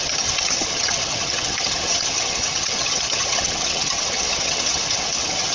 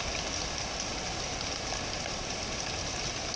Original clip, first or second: second